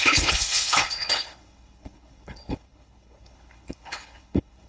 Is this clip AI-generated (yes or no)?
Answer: yes